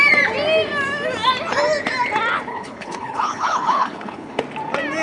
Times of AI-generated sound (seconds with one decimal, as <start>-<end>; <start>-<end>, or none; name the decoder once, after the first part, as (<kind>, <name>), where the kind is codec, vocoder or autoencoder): 2.5-4.4 (codec, HILCodec)